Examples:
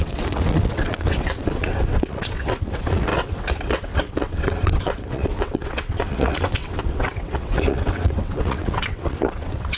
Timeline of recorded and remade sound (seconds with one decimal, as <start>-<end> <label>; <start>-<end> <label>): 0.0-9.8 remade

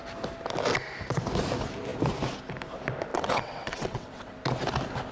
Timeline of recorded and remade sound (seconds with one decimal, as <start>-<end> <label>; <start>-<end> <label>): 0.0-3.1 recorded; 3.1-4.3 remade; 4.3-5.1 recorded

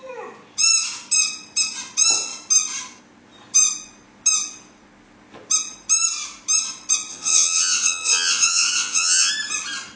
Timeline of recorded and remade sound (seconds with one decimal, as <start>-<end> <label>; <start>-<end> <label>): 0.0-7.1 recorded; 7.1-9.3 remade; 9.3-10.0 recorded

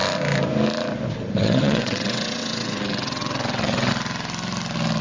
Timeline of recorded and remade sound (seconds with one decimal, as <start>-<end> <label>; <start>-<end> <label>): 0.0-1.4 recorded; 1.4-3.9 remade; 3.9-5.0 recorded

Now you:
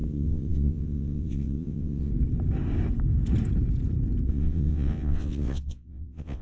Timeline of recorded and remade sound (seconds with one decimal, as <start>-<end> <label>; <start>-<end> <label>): 0.0-2.1 remade; 2.1-4.3 recorded; 4.3-6.4 remade

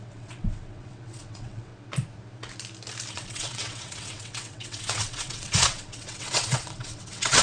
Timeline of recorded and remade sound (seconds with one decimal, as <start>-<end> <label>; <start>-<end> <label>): 0.0-1.7 remade; 1.7-3.1 recorded; 3.1-7.4 remade